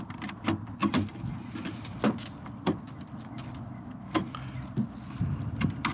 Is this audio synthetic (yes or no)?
no